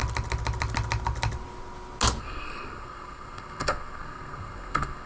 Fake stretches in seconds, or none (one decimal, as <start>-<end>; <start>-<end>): 2.2-5.1